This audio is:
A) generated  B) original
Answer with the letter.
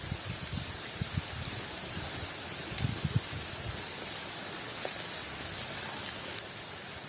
B